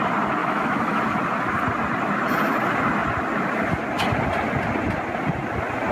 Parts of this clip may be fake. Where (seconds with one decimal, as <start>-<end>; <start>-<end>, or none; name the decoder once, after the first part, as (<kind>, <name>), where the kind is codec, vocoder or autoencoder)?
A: 0.4-1.0 (autoencoder, DAC-VAE)